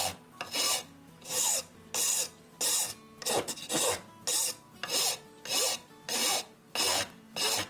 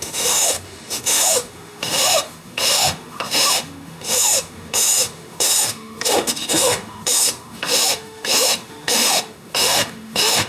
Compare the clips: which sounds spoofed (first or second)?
second